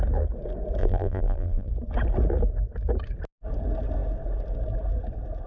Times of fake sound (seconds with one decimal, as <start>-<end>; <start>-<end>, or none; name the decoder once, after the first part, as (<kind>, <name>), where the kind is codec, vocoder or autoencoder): 0.8-1.7 (vocoder, BigVGAN v2)